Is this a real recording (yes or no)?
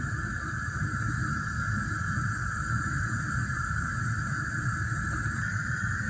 yes